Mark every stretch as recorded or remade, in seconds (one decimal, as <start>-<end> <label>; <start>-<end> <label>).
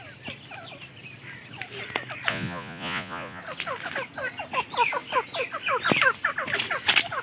0.0-2.3 recorded; 2.3-3.4 remade; 3.4-7.2 recorded